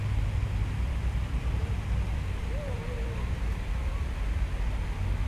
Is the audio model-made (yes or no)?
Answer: no